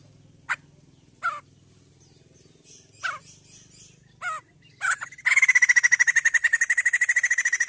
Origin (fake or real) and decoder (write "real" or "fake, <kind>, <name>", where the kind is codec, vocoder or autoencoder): real